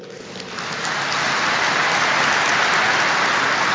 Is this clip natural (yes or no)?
yes